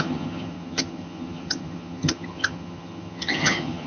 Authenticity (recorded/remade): remade